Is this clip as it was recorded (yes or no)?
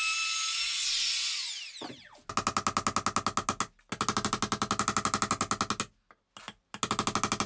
yes